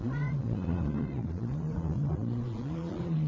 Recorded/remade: remade